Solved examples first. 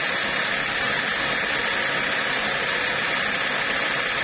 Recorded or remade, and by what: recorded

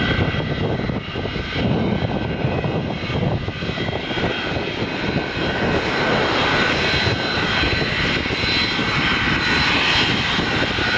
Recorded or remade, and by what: recorded